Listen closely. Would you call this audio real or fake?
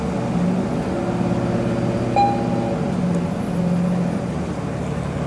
real